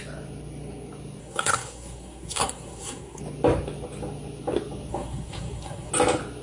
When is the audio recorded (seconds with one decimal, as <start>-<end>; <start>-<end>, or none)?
0.0-1.2; 3.2-4.9; 5.9-6.4